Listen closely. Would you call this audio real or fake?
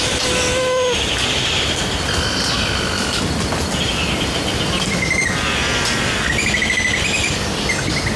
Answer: real